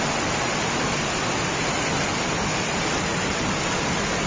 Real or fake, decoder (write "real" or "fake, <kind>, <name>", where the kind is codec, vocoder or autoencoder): real